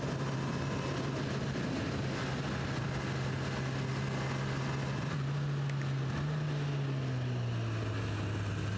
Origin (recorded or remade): recorded